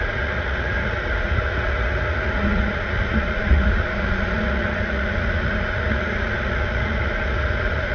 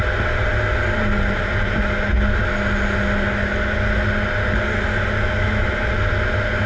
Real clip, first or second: second